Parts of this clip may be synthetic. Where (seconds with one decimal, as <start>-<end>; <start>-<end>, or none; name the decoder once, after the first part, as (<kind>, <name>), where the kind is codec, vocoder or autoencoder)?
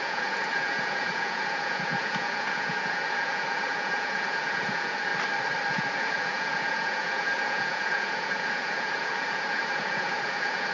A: 0.0-5.1 (vocoder, Vocos); 5.7-10.7